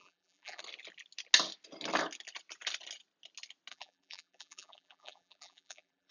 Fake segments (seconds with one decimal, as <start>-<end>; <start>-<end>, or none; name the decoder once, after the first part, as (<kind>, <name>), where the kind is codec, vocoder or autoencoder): 0.0-0.6 (vocoder, BigVGAN v2); 3.7-6.1

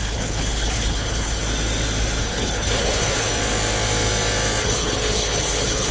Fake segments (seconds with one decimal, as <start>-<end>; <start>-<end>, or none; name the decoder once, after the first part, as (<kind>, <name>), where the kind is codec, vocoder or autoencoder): 0.0-1.4 (codec, HILCodec); 2.2-3.3; 4.6-5.9

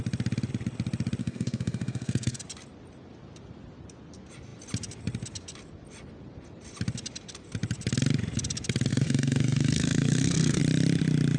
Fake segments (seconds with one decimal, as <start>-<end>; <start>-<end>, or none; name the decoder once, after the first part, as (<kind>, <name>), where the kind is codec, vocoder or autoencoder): 1.2-2.4 (codec, SNAC); 8.9-10.6

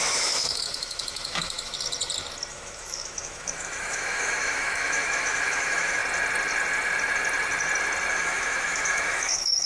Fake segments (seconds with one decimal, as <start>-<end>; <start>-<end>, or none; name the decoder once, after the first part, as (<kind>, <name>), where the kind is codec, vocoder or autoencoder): 0.0-1.7 (autoencoder, DAC-VAE); 2.5-6.0; 8.1-9.7

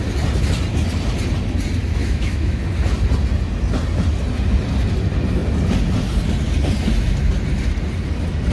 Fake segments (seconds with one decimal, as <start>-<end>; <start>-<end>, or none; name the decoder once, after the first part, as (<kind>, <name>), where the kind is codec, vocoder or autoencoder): 2.0-2.6 (autoencoder, DAC-VAE)

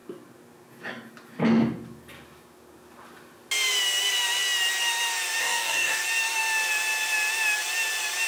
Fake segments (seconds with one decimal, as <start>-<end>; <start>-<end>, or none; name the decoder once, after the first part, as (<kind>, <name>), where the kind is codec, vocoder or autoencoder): 5.4-6.0 (codec, DAC)

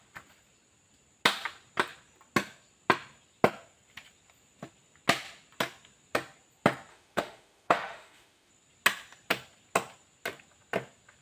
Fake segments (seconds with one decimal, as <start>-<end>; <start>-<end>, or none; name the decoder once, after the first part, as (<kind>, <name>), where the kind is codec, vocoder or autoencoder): 6.9-8.5 (autoencoder, DAC-VAE)